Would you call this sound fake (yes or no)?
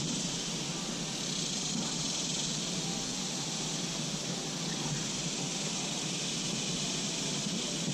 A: no